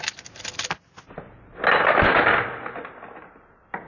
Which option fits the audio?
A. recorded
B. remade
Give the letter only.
A